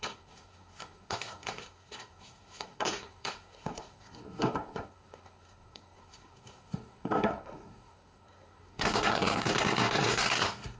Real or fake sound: fake